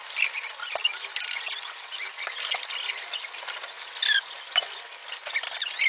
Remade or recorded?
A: recorded